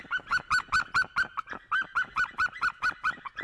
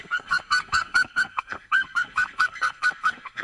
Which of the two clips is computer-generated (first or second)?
second